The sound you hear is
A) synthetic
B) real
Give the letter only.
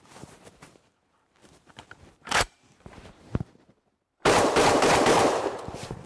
A